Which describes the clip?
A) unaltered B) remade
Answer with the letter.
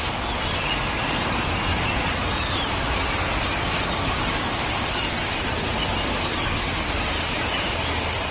A